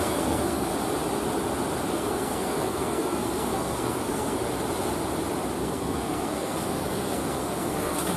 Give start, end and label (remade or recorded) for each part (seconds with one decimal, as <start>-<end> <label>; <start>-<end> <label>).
0.0-0.7 remade; 0.7-1.9 recorded; 1.9-4.4 remade; 4.4-5.6 recorded; 5.6-8.2 remade